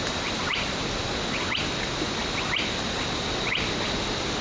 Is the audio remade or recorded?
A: recorded